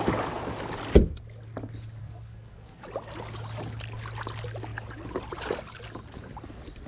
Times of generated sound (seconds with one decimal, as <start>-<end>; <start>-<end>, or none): 2.0-2.8